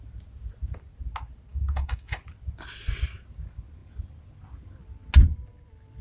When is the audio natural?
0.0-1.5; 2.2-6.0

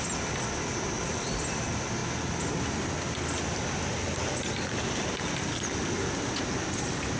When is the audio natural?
0.0-7.2

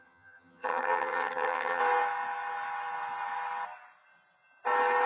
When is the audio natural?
1.8-5.1

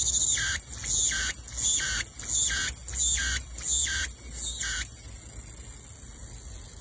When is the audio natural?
0.0-6.8

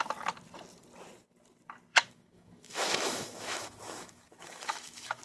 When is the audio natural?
0.0-1.9

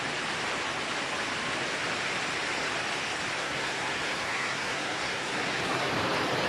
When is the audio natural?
0.0-3.4; 5.9-6.5